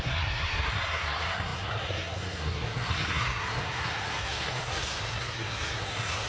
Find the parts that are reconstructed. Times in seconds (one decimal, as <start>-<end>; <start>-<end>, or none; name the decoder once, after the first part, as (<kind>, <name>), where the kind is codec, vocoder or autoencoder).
0.0-6.3 (codec, SNAC)